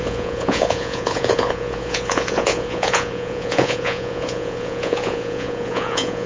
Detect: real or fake fake